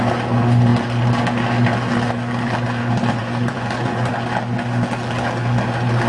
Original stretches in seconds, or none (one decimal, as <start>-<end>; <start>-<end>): 0.0-3.2; 4.1-6.1